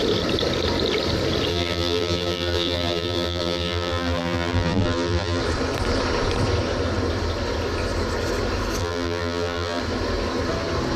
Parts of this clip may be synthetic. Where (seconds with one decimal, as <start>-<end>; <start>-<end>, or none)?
1.5-5.4; 8.8-9.8